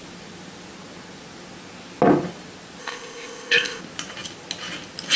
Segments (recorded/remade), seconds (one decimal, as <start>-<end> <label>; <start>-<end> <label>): 0.0-2.8 recorded; 2.8-3.8 remade; 3.8-5.2 recorded